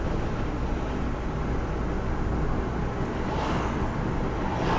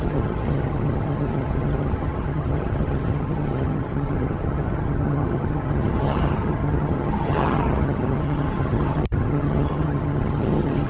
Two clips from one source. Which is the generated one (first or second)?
second